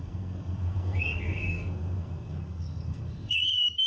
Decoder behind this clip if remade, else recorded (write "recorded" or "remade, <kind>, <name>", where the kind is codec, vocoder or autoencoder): remade, codec, SNAC